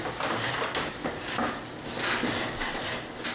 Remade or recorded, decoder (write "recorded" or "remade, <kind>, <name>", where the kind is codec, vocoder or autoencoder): recorded